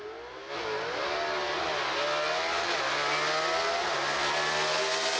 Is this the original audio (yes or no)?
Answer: yes